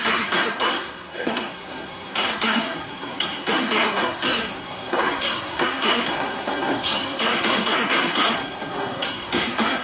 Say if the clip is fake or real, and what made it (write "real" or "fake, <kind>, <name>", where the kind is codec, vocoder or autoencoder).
fake, codec, SNAC